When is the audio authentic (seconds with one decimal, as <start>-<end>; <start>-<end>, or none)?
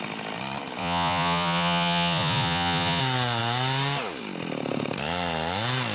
0.0-0.8; 3.0-5.9